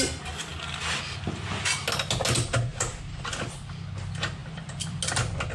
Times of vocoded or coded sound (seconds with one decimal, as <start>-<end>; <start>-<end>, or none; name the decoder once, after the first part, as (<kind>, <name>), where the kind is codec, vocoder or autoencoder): 2.7-3.3 (vocoder, BigVGAN v2); 4.4-5.0